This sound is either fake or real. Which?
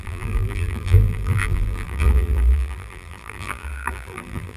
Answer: fake